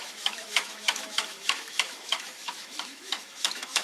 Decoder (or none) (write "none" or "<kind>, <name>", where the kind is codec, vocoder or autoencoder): autoencoder, DAC-VAE